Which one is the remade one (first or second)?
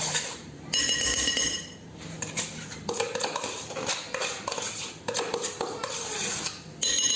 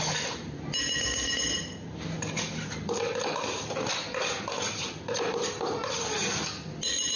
first